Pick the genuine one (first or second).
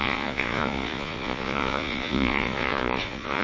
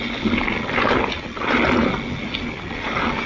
second